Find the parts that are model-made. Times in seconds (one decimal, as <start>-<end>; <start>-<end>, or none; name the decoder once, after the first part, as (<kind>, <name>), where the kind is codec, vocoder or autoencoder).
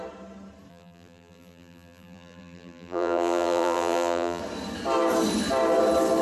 0.7-4.4 (vocoder, BigVGAN v2)